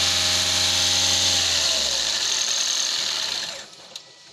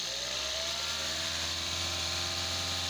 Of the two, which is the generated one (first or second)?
second